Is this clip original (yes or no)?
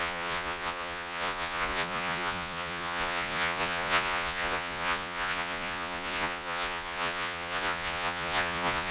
no